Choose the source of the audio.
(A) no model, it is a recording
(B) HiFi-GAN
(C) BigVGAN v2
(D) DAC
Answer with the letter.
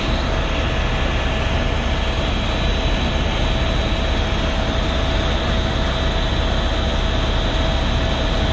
A